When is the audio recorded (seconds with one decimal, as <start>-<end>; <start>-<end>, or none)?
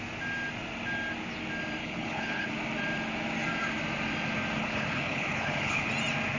0.0-1.8; 2.5-4.6; 5.9-6.4